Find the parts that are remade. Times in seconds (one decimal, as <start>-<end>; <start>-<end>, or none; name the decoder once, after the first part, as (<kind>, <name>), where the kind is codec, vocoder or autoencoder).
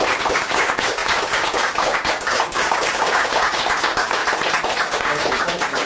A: 0.0-4.2 (codec, DAC); 4.8-5.9